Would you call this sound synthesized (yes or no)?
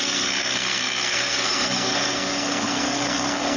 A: yes